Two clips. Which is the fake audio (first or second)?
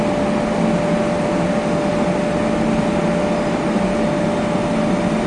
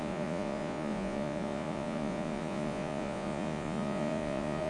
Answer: second